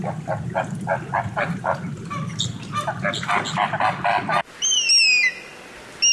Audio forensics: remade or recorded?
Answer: recorded